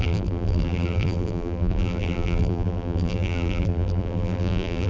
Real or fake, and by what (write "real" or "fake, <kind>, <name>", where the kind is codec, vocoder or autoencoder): fake, vocoder, BigVGAN v2